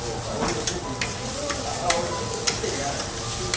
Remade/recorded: recorded